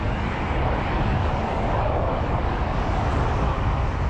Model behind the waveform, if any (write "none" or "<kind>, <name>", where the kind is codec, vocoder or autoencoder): codec, DAC